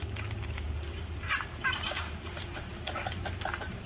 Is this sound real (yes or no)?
yes